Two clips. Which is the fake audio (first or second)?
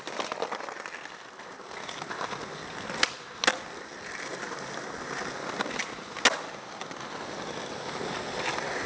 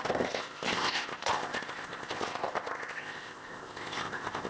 second